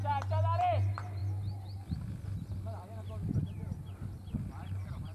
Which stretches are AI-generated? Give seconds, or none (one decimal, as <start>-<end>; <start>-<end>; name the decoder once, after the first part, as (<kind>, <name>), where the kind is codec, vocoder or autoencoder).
none